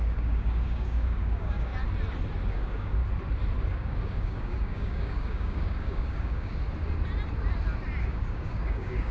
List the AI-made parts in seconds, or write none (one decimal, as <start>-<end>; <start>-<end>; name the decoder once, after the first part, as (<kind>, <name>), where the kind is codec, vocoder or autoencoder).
0.0-1.7 (codec, DAC); 2.5-3.0; 3.7-6.5; 8.0-9.1